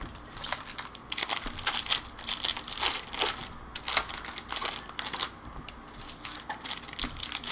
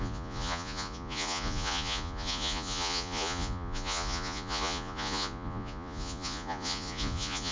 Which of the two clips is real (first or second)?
first